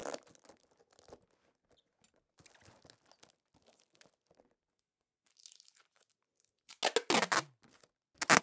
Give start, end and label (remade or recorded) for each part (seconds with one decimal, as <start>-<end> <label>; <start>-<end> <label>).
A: 0.0-4.7 recorded; 4.7-5.3 remade; 5.3-8.4 recorded